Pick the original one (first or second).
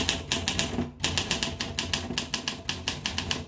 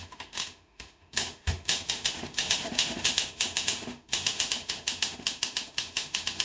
first